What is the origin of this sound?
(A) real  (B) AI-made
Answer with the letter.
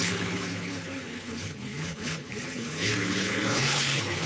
B